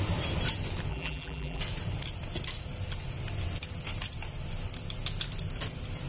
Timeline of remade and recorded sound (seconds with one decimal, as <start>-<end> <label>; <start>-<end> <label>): 0.0-0.9 recorded; 0.9-1.6 remade; 1.6-6.1 recorded